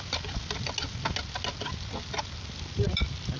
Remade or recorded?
recorded